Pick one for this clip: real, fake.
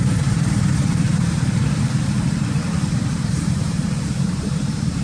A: fake